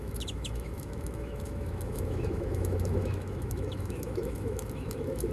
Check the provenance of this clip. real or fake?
fake